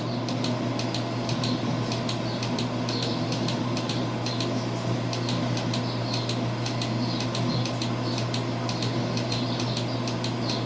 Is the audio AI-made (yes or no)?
no